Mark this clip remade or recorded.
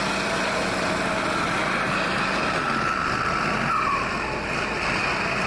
recorded